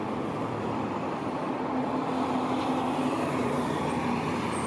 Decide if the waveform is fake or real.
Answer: fake